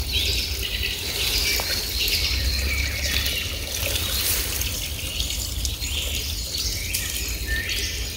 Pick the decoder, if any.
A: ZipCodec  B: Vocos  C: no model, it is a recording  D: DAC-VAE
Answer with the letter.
C